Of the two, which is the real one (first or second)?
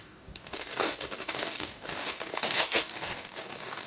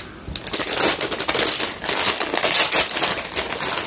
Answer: second